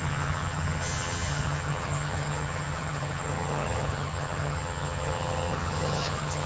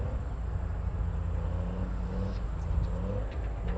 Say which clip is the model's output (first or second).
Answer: first